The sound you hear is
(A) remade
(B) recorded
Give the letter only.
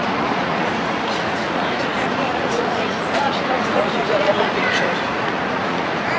A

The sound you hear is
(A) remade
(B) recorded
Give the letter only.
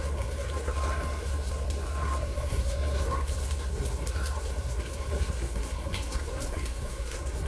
A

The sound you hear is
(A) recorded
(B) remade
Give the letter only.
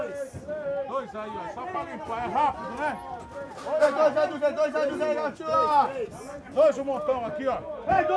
A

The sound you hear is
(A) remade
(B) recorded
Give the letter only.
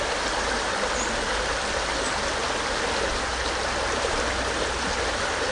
B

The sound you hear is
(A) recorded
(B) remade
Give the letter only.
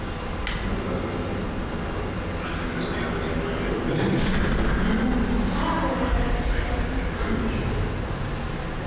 A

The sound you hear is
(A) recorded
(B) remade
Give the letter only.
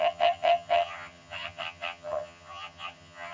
B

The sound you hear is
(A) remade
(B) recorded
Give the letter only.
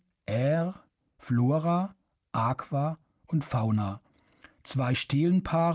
B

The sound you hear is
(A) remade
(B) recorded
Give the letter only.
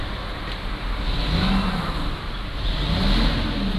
B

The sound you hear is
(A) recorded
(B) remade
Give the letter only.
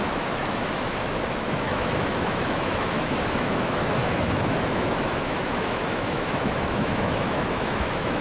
B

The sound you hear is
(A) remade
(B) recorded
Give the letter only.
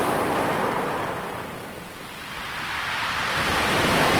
A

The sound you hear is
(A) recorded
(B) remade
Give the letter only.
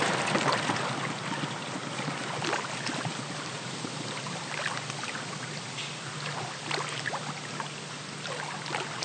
A